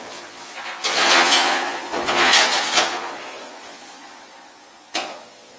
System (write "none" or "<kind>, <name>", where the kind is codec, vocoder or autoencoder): vocoder, Vocos